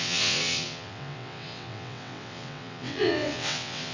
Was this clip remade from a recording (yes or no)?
yes